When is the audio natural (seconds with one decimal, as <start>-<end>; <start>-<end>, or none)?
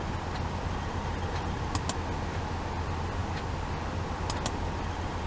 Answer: 0.0-5.3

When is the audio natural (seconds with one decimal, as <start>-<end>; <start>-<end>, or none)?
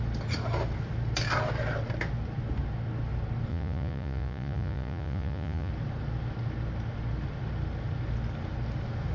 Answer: 0.0-3.5; 5.7-9.1